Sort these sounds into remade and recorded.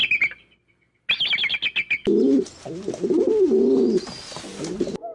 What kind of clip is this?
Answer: recorded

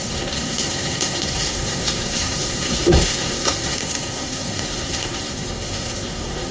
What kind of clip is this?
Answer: remade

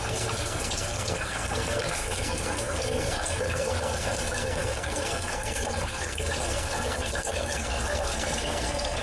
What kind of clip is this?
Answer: remade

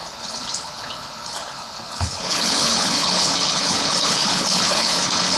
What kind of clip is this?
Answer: remade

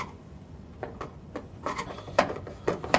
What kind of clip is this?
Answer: remade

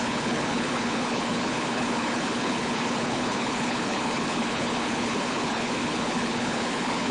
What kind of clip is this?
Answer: remade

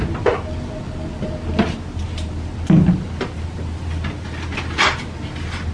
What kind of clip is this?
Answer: recorded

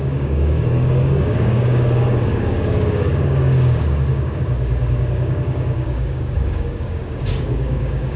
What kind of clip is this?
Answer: remade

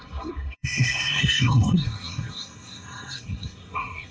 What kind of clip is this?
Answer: remade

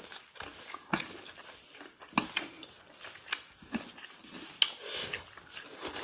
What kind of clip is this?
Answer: recorded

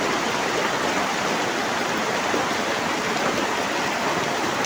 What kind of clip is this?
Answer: recorded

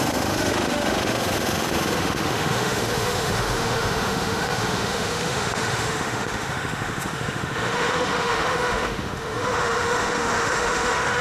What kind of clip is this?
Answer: remade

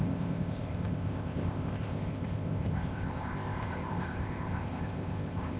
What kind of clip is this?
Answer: remade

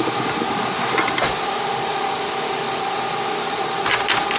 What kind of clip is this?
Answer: recorded